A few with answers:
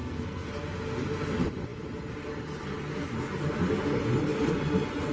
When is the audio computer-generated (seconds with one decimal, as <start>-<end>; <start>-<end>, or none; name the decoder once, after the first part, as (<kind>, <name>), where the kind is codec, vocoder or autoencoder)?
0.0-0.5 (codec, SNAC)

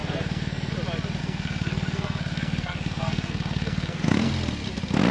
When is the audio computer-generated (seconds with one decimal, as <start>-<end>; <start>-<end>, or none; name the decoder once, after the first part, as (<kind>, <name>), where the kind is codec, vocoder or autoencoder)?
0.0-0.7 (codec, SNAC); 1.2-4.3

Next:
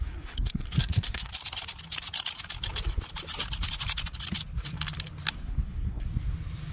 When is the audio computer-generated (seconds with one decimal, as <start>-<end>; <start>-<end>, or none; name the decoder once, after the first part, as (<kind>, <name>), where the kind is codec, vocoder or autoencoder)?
0.0-1.3 (codec, SNAC); 5.3-6.1

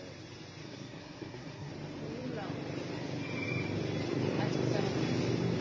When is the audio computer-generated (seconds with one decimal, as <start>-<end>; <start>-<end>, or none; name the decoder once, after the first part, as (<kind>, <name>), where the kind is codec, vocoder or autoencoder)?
0.6-1.7 (codec, SNAC)

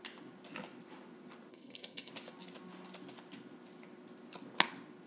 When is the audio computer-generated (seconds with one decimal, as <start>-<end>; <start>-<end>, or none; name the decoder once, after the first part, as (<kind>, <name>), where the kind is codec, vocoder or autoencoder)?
1.5-2.1 (codec, SNAC)